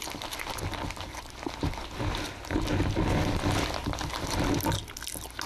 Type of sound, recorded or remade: recorded